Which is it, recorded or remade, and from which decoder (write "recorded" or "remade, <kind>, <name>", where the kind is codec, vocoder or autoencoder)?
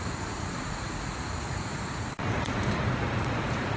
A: remade, vocoder, Vocos